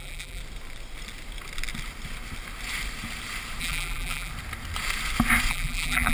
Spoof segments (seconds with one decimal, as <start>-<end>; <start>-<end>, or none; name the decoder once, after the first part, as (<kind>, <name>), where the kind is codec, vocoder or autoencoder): 0.0-0.4 (vocoder, BigVGAN v2); 3.6-4.3; 5.5-6.1